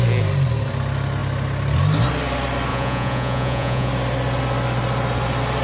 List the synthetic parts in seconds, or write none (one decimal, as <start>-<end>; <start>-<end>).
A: 2.7-3.9